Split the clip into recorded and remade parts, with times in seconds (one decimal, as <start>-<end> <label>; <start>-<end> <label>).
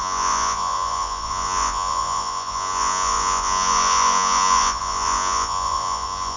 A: 0.0-6.4 remade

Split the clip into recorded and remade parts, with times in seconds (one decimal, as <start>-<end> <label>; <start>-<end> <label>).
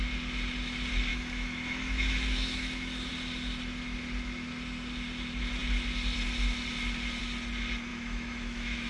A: 0.0-1.1 recorded; 1.1-3.1 remade; 3.1-7.9 recorded; 7.9-8.9 remade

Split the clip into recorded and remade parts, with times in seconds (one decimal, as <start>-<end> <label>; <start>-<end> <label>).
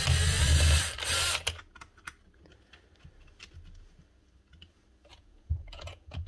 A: 0.0-5.1 recorded; 5.1-6.3 remade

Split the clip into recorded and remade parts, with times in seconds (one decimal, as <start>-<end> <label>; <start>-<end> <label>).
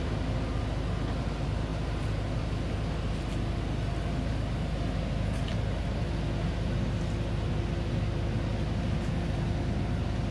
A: 0.0-10.3 recorded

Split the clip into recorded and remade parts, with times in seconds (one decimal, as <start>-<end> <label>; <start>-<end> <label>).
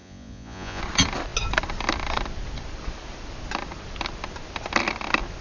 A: 0.0-0.8 remade; 0.8-5.4 recorded